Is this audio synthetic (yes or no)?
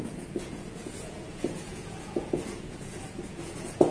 yes